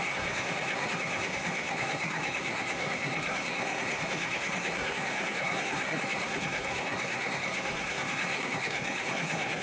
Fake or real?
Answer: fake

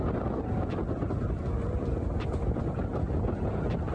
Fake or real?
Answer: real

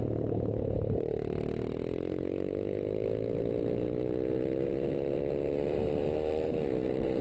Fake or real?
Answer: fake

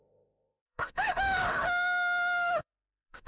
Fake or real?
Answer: fake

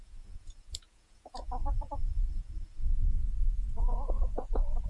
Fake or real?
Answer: fake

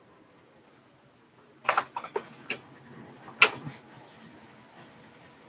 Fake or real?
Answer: real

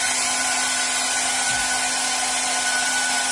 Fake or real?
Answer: real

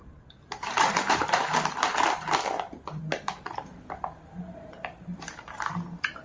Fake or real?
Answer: fake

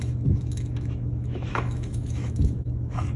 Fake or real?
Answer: fake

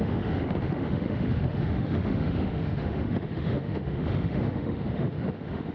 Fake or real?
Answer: fake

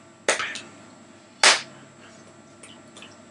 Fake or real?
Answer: real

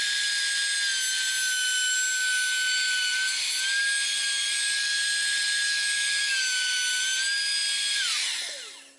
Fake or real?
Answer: real